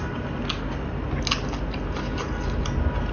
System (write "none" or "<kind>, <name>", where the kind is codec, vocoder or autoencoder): none